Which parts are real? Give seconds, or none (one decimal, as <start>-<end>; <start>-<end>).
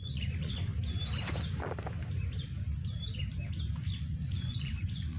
0.7-3.8